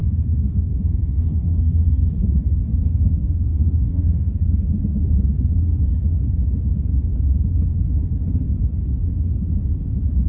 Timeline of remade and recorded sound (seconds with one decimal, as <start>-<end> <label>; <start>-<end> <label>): 0.0-2.1 remade; 2.1-2.7 recorded; 2.7-4.8 remade; 4.8-10.3 recorded